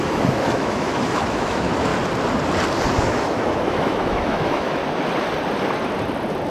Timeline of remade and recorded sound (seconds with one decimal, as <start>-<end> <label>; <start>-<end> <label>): 0.0-1.9 remade; 1.9-3.0 recorded; 3.0-4.8 remade; 4.8-6.5 recorded